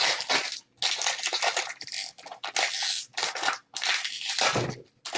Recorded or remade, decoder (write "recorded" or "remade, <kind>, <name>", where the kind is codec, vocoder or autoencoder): recorded